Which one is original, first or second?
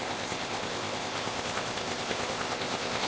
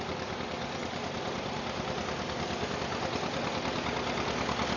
second